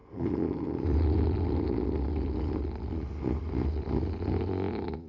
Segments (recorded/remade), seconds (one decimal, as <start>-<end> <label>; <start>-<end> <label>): 0.0-5.1 recorded

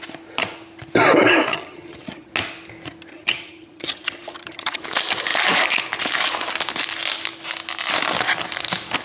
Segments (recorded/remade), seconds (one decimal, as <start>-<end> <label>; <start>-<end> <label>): 0.0-1.5 recorded; 1.5-2.3 remade; 2.3-3.1 recorded; 3.1-4.8 remade; 4.8-9.0 recorded

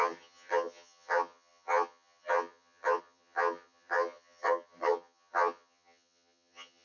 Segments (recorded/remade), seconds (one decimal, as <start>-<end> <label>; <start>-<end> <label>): 0.0-6.8 remade

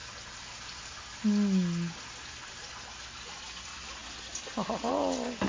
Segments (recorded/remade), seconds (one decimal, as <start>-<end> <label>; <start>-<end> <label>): 0.0-5.5 recorded

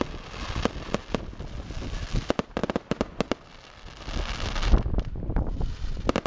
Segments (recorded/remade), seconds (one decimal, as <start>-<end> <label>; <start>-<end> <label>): 0.0-6.3 recorded